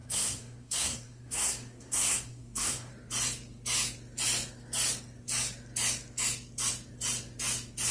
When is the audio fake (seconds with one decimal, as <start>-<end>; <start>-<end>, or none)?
0.0-2.9